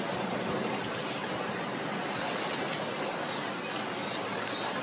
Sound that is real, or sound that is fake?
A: real